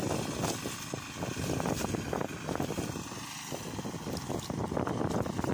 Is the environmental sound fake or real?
real